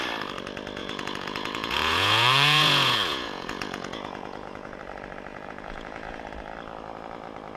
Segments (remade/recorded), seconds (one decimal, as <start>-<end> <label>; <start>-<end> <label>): 0.0-0.8 recorded; 0.8-4.8 remade; 4.8-5.3 recorded; 5.3-6.2 remade; 6.2-7.6 recorded